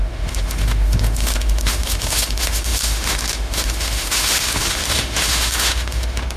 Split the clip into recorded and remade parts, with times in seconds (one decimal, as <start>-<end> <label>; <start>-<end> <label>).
0.0-6.4 remade